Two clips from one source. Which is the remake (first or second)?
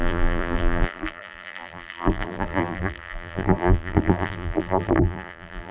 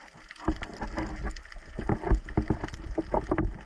first